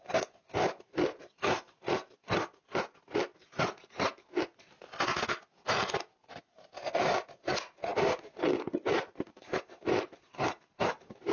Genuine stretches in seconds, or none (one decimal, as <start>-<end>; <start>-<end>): 0.0-11.3

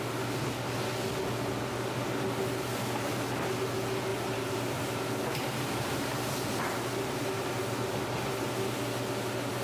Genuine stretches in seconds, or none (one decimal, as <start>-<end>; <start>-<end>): 0.0-4.1; 8.0-9.6

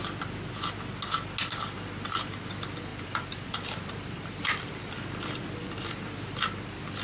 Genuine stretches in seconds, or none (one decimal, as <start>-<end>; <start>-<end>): 0.0-2.9; 4.9-7.0

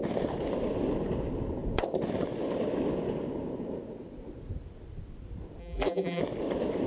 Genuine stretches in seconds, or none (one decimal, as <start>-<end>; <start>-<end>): 0.0-5.6; 6.2-6.9

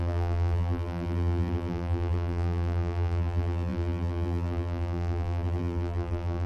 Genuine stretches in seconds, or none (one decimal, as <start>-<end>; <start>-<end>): none